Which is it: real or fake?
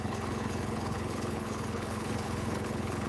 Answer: fake